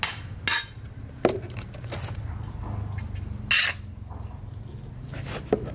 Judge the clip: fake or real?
real